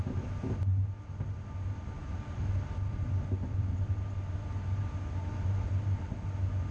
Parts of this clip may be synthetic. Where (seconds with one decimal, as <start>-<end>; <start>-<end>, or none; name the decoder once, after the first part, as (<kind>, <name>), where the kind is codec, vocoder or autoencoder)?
none